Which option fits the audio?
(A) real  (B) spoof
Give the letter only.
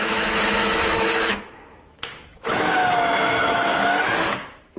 B